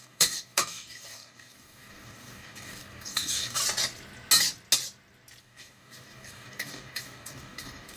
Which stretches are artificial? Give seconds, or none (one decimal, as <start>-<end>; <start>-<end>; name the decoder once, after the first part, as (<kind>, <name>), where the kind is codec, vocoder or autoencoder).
0.0-3.6 (codec, DAC); 5.4-8.0

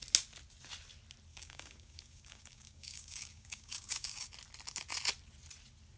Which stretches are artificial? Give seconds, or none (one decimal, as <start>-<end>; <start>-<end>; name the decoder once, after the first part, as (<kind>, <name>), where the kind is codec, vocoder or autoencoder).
1.3-4.3 (codec, DAC)